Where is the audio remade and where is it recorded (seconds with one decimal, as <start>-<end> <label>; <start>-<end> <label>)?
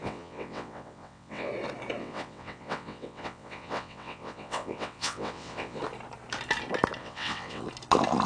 0.0-1.5 remade; 1.5-2.0 recorded; 2.0-5.8 remade; 5.8-7.0 recorded; 7.0-7.6 remade; 7.6-8.3 recorded